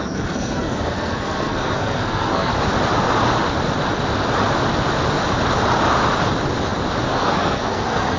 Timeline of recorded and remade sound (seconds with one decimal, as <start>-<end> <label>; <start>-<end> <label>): 0.0-2.5 remade; 2.5-7.1 recorded; 7.1-8.2 remade